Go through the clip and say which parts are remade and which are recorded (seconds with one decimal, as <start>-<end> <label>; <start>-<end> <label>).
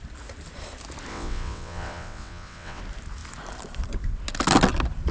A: 0.0-1.1 recorded; 1.1-2.8 remade; 2.8-5.1 recorded